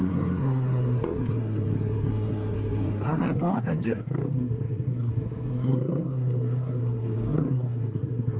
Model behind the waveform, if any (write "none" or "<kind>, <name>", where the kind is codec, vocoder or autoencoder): codec, SNAC